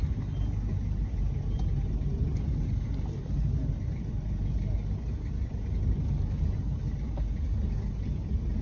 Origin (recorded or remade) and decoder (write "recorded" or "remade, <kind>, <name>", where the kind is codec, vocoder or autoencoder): recorded